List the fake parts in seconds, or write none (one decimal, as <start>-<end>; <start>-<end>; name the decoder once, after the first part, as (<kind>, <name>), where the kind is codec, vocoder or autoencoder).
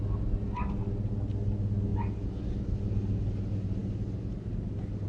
none